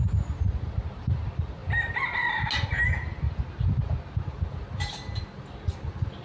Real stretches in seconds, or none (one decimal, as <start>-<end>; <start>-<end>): 0.0-6.2